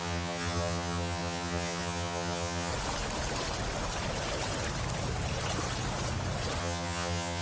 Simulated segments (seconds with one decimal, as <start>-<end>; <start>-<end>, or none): 0.0-2.7; 6.6-7.4